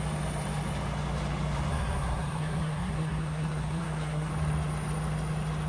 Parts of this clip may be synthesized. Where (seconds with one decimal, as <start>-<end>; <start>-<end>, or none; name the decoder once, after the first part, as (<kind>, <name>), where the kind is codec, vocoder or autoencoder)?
1.7-4.3 (codec, SNAC)